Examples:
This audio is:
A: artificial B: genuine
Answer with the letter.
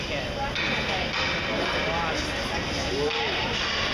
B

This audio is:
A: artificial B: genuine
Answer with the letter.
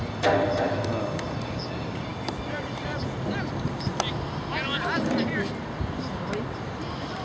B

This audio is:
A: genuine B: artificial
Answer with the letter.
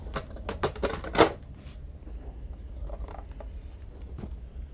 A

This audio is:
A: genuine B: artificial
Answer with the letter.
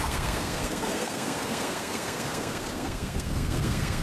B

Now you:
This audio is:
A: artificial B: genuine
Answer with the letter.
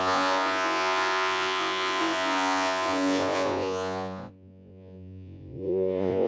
A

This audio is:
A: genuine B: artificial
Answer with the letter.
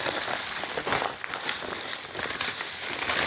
A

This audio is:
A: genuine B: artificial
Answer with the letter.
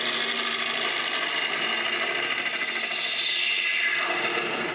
A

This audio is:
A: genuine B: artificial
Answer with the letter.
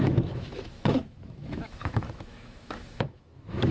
B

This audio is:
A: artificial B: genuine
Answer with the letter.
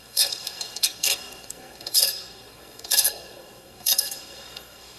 A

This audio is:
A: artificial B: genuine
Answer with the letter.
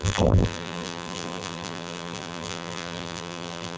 A